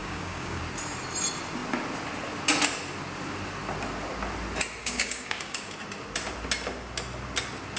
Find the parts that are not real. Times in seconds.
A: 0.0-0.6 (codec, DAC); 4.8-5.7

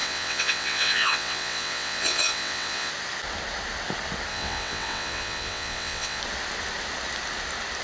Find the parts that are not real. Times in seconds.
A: 0.0-2.9 (vocoder, WaveNeXt); 4.3-6.2

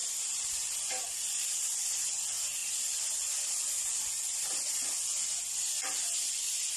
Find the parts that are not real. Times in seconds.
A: 0.0-1.9 (vocoder, BigVGAN v2)

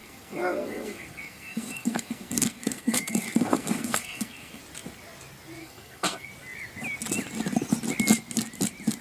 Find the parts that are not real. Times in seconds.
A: 0.0-4.6 (codec, SNAC); 5.6-6.3

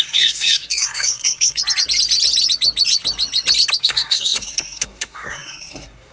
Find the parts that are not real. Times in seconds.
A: 0.0-1.6 (codec, SNAC); 3.8-6.1

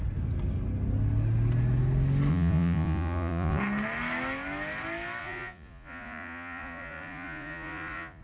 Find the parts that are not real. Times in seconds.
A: 2.3-3.6 (vocoder, Vocos); 5.2-8.2

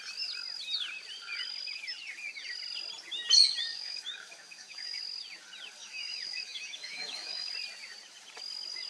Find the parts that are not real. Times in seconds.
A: 3.7-5.0 (autoencoder, DAC-VAE); 5.8-7.5

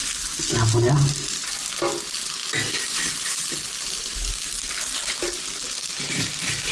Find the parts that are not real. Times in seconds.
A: none